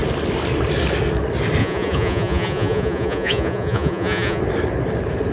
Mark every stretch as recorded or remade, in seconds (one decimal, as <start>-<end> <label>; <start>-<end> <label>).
0.0-1.6 recorded; 1.6-4.4 remade; 4.4-5.3 recorded

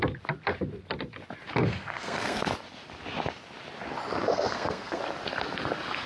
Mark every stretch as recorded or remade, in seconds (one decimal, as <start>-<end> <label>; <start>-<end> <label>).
0.0-1.6 recorded; 1.6-2.5 remade; 2.5-4.3 recorded; 4.3-5.0 remade; 5.0-6.1 recorded

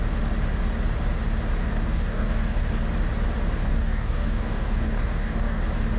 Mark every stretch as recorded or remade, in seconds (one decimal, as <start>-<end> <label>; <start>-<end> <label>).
0.0-1.6 recorded; 1.6-2.7 remade; 2.7-3.6 recorded; 3.6-5.6 remade; 5.6-6.0 recorded